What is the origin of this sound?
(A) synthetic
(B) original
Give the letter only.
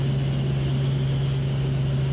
B